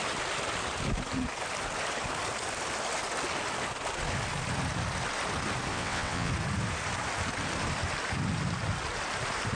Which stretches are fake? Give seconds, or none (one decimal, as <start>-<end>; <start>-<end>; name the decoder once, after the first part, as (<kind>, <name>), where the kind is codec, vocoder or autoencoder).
5.7-6.3 (vocoder, WaveNeXt)